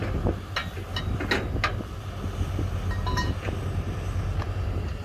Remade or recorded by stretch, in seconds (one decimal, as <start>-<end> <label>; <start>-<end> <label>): 0.0-5.0 recorded

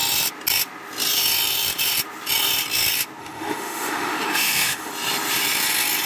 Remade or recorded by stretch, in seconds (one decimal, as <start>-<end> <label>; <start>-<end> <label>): 0.0-3.2 recorded; 3.2-4.9 remade; 4.9-6.1 recorded